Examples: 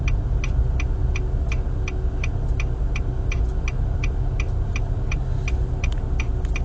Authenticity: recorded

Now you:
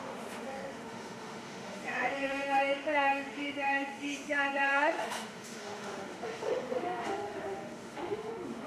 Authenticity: remade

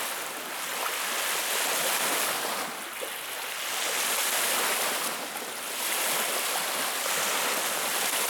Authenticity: recorded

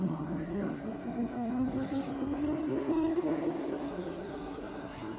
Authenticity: remade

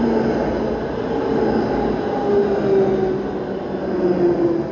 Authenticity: recorded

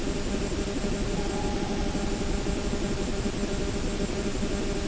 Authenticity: recorded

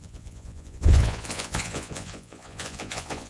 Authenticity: remade